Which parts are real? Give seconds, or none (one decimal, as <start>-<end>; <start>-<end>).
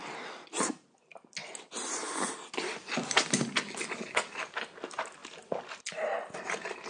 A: 0.0-6.9